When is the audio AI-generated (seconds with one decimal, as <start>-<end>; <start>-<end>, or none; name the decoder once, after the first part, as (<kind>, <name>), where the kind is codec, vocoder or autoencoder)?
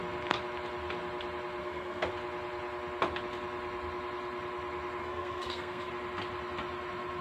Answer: 1.6-2.1 (codec, SNAC); 5.0-5.9